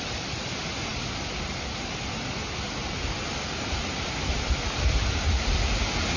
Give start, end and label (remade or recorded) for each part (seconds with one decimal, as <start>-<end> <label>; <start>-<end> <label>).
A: 0.0-6.2 recorded